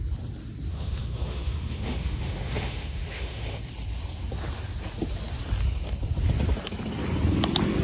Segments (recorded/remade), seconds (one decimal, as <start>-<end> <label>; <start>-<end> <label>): 0.0-0.7 recorded; 0.7-3.6 remade; 3.6-7.8 recorded